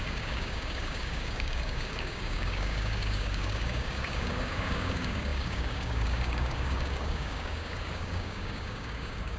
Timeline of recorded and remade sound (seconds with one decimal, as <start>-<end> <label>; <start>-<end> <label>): 0.0-9.4 remade